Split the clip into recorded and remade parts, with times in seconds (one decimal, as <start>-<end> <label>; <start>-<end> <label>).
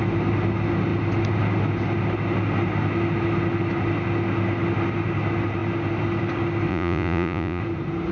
0.0-6.7 recorded; 6.7-7.6 remade; 7.6-8.1 recorded